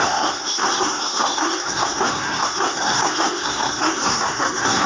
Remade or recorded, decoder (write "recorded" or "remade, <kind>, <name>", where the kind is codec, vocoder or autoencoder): remade, codec, SNAC